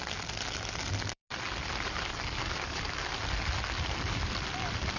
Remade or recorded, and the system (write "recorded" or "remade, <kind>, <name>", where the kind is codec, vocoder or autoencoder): recorded